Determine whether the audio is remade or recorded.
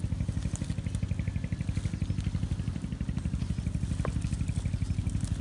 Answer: recorded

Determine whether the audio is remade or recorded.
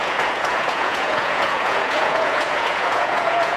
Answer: remade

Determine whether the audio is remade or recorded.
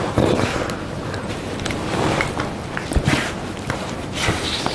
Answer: recorded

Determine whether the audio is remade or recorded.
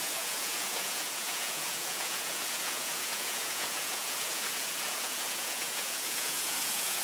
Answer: remade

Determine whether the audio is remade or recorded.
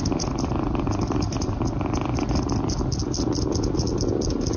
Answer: recorded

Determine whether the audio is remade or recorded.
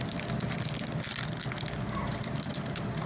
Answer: recorded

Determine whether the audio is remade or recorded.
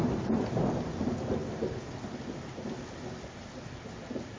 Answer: recorded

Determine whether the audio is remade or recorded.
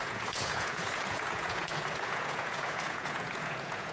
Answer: remade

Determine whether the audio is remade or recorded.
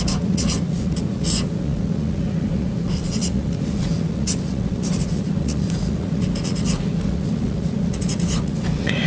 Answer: remade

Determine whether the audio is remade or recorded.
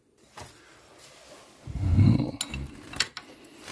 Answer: recorded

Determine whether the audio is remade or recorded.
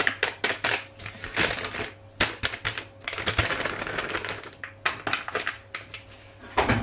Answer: recorded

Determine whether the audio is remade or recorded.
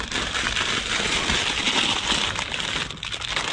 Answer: recorded